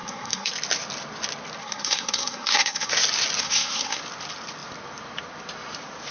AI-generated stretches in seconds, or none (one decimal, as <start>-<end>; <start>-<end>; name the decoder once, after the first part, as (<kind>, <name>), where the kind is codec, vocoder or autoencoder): 0.0-0.5 (codec, SNAC); 1.6-2.9; 3.4-4.0